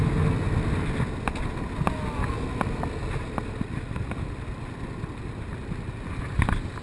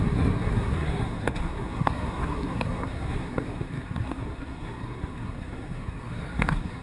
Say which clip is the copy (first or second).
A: second